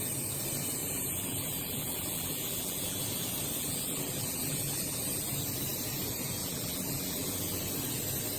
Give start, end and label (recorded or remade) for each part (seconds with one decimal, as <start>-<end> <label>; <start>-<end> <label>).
0.0-0.8 recorded; 0.8-3.0 remade; 3.0-3.6 recorded; 3.6-5.2 remade; 5.2-6.4 recorded; 6.4-7.6 remade; 7.6-8.4 recorded

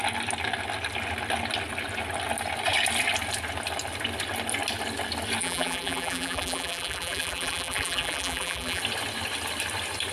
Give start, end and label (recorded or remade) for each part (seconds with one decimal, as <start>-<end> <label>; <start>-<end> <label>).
0.0-5.4 recorded; 5.4-8.8 remade; 8.8-10.1 recorded

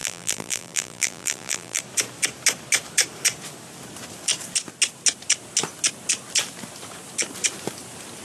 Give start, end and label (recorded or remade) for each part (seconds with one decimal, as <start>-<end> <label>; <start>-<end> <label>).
0.0-1.8 remade; 1.8-8.2 recorded

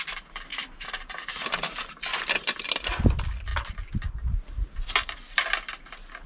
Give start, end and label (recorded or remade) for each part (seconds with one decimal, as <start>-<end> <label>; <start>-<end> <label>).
0.0-0.5 recorded; 0.5-1.9 remade; 1.9-6.3 recorded

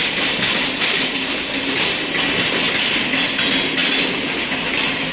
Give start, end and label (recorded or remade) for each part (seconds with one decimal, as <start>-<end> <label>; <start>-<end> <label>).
0.0-1.1 remade; 1.1-5.1 recorded

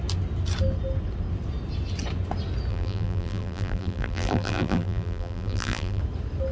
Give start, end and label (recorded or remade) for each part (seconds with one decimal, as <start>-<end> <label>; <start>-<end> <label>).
0.0-2.7 recorded; 2.7-6.0 remade; 6.0-6.5 recorded

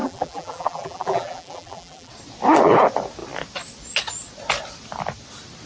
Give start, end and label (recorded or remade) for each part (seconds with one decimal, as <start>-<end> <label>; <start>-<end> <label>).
0.0-2.1 remade; 2.1-5.7 recorded